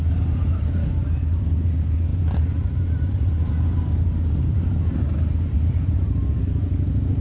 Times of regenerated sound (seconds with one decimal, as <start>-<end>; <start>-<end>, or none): 2.1-6.4